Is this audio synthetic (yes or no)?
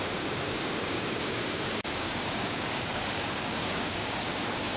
yes